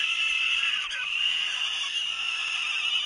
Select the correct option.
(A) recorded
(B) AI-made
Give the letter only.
A